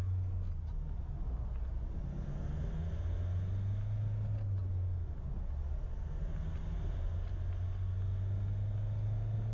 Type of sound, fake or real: real